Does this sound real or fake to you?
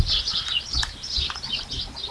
real